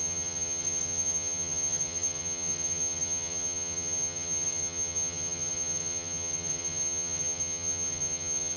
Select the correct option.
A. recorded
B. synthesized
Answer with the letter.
B